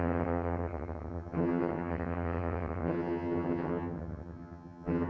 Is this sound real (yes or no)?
no